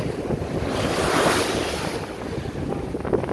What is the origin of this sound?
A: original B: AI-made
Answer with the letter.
A